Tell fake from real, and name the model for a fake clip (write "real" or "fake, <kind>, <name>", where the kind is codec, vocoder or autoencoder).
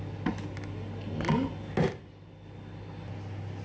real